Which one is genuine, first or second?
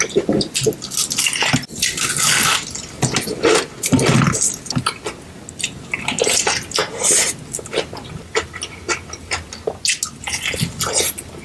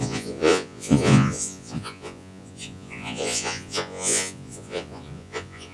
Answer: first